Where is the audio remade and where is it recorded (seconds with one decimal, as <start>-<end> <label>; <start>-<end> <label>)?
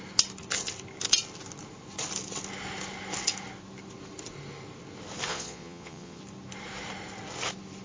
0.0-5.3 recorded; 5.3-6.2 remade; 6.2-7.8 recorded